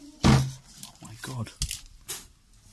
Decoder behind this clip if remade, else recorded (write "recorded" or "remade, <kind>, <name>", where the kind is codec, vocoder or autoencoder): recorded